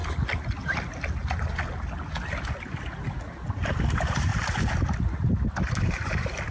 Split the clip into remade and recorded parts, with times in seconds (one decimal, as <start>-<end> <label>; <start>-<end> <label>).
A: 0.0-3.5 recorded; 3.5-4.3 remade; 4.3-5.7 recorded; 5.7-6.5 remade